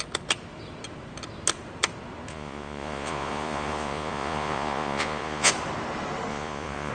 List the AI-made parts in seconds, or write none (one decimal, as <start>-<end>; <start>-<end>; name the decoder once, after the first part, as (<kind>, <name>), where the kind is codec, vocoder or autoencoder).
2.3-5.5 (vocoder, Vocos); 6.3-6.9